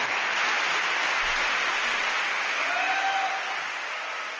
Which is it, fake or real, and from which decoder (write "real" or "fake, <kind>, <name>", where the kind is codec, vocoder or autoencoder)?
real